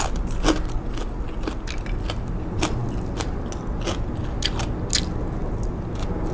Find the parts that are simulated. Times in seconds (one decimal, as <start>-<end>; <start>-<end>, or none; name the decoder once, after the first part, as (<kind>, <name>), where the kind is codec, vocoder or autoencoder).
none